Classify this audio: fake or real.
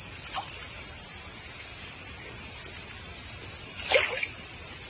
real